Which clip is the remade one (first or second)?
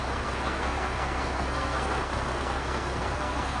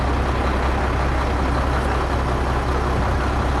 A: first